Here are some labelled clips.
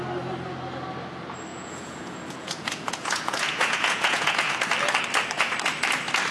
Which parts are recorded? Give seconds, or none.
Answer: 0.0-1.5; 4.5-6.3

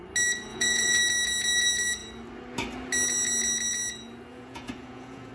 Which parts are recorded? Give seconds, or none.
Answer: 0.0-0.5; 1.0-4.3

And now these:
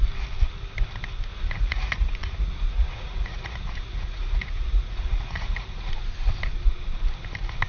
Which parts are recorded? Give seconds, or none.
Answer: 0.0-1.3; 5.9-7.7

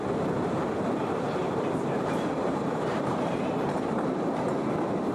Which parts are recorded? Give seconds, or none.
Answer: 0.0-1.4; 3.8-5.1

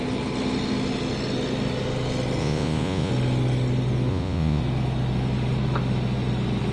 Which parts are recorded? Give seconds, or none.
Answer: 0.0-2.4; 3.1-4.1; 4.6-6.7